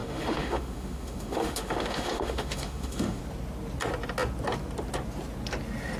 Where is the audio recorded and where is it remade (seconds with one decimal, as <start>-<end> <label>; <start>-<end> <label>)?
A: 0.0-3.2 remade; 3.2-6.0 recorded